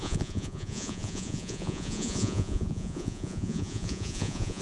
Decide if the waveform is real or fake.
fake